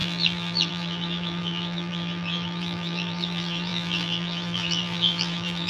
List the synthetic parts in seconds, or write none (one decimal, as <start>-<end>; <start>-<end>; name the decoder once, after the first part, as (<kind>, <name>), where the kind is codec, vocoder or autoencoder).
0.0-5.7 (vocoder, BigVGAN v2)